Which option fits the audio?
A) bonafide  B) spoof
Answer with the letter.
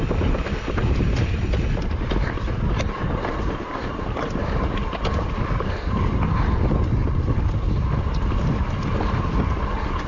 A